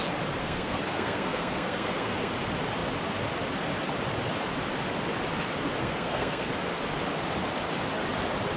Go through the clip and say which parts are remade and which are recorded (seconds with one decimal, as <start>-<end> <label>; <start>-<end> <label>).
0.0-0.4 recorded; 0.4-2.3 remade; 2.3-5.8 recorded; 5.8-6.5 remade; 6.5-8.6 recorded